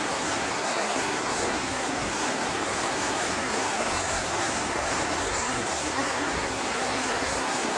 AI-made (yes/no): yes